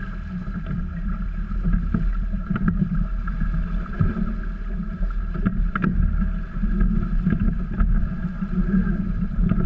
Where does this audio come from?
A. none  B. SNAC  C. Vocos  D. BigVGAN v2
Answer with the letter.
A